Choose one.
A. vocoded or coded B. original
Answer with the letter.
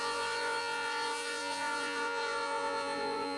A